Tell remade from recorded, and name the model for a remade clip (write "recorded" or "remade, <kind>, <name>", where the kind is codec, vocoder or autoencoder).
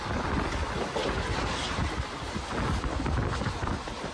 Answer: recorded